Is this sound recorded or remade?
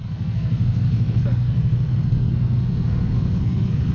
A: remade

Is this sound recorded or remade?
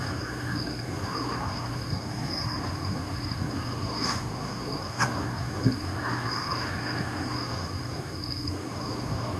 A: remade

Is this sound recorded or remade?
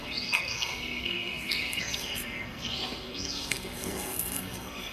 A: remade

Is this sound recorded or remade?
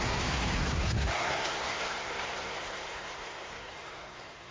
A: remade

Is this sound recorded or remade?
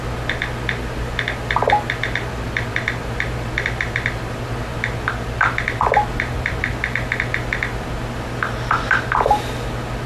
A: recorded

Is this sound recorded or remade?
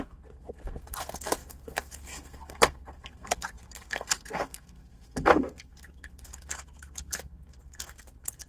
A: remade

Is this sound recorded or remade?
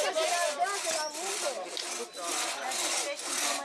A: recorded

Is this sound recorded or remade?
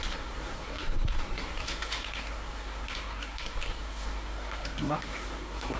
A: remade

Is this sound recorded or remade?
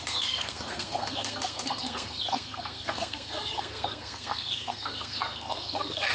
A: remade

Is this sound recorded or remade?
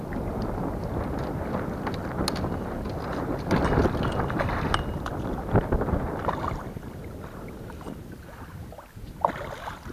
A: recorded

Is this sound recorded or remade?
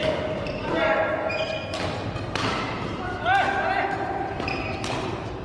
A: recorded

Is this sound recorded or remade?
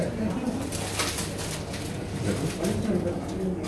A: recorded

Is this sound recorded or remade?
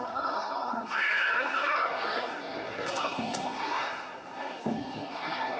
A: remade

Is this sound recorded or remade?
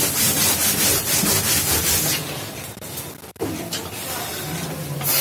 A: recorded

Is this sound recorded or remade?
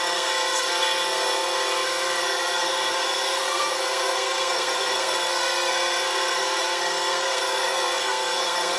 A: remade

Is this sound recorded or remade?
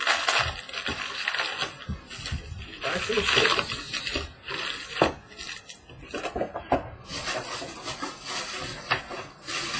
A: recorded